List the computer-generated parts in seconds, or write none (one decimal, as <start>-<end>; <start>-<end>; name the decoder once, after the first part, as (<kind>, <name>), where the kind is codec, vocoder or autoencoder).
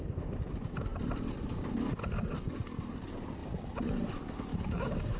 4.5-5.2 (codec, DAC)